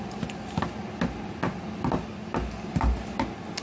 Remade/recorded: recorded